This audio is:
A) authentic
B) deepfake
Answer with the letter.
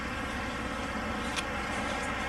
A